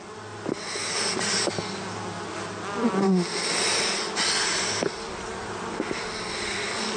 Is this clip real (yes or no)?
yes